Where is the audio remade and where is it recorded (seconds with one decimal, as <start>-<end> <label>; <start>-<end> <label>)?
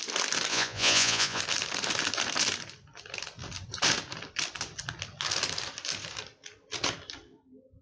0.0-0.5 recorded; 0.5-1.4 remade; 1.4-7.8 recorded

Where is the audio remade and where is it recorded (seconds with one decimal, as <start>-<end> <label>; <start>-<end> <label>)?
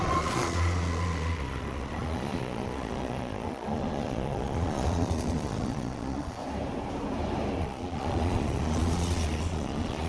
0.0-6.4 remade; 6.4-7.6 recorded; 7.6-10.1 remade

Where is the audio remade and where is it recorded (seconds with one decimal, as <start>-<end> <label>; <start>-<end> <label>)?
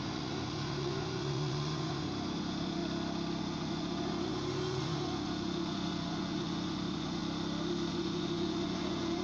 0.0-2.8 remade; 2.8-3.4 recorded; 3.4-7.2 remade; 7.2-7.9 recorded; 7.9-9.2 remade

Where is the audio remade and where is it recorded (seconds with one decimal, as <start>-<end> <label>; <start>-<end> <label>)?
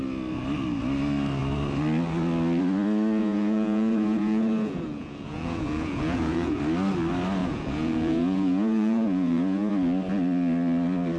0.0-3.2 recorded; 3.2-6.6 remade; 6.6-7.4 recorded; 7.4-9.7 remade; 9.7-11.2 recorded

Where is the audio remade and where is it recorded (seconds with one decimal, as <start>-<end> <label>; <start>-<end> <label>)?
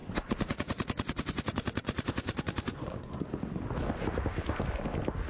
0.0-3.2 remade; 3.2-5.3 recorded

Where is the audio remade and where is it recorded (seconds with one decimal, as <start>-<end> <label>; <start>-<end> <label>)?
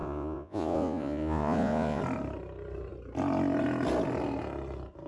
0.0-2.0 remade; 2.0-5.1 recorded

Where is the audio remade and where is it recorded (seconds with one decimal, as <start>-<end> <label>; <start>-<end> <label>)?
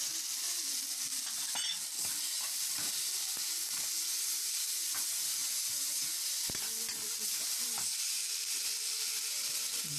0.0-10.0 recorded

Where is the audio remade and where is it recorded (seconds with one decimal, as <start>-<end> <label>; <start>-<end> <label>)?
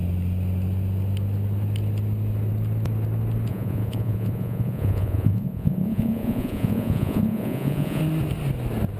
0.0-3.5 recorded; 3.5-8.0 remade; 8.0-9.0 recorded